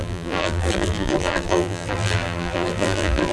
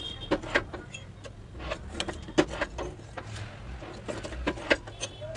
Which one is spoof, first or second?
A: first